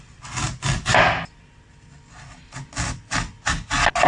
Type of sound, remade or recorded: recorded